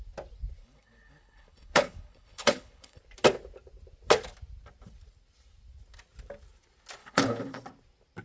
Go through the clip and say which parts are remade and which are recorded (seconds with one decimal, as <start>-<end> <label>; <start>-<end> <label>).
0.0-0.6 recorded; 0.6-3.0 remade; 3.0-7.0 recorded; 7.0-7.6 remade; 7.6-8.2 recorded